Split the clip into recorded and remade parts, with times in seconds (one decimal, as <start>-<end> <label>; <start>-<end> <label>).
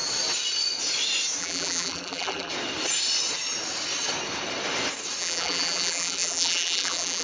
0.0-1.4 recorded; 1.4-2.5 remade; 2.5-5.2 recorded; 5.2-7.2 remade